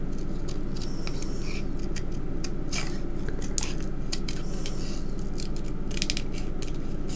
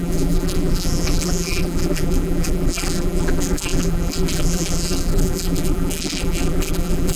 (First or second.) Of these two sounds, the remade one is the second